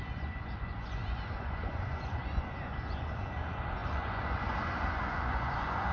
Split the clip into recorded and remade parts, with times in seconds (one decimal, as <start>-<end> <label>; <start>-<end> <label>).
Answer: 0.0-5.9 remade